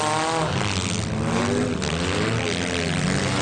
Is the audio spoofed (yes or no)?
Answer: no